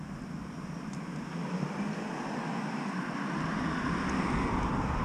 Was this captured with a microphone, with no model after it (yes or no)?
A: yes